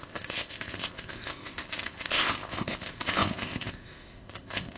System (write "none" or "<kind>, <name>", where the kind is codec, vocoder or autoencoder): codec, ZipCodec